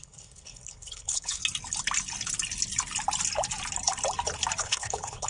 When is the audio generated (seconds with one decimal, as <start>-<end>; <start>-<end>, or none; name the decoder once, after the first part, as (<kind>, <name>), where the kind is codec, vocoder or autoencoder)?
0.0-1.4 (codec, HILCodec); 4.6-5.3